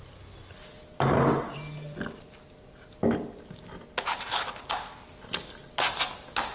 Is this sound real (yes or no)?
yes